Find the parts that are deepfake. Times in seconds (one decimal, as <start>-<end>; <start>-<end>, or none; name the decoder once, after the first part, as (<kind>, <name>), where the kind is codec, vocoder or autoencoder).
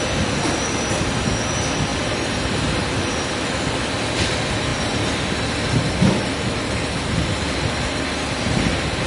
none